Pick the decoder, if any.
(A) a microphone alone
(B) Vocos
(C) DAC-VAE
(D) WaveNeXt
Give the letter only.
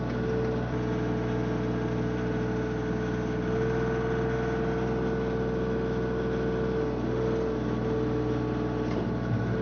A